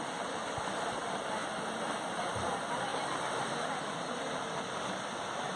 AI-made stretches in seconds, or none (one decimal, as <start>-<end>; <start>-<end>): none